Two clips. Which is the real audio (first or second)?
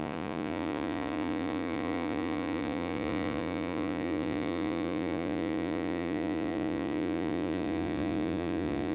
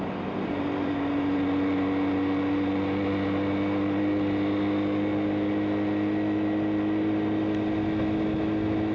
second